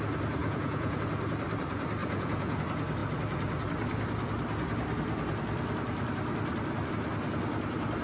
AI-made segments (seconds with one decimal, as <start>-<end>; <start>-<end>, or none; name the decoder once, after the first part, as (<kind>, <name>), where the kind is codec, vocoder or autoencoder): 0.4-1.0 (vocoder, Vocos); 2.0-2.6